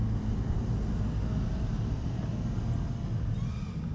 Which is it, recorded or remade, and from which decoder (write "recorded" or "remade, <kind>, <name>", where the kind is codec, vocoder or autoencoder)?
recorded